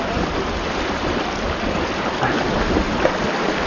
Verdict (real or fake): real